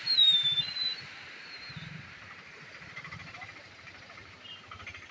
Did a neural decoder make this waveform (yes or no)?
yes